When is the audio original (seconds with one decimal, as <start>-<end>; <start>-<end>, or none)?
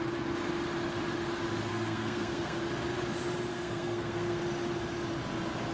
0.0-1.7; 2.6-3.5; 4.4-5.7